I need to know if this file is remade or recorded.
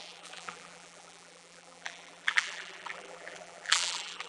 remade